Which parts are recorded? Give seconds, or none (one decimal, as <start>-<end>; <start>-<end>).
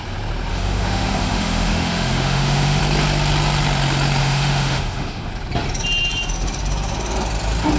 0.0-0.5; 2.8-4.2; 5.3-7.8